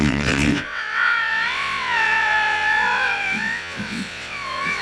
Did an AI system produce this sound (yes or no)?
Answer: yes